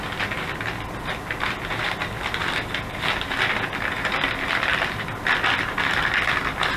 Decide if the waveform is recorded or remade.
recorded